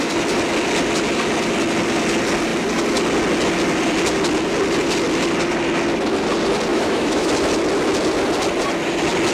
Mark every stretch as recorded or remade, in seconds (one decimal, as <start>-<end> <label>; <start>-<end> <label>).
0.0-6.7 recorded; 6.7-7.3 remade; 7.3-9.3 recorded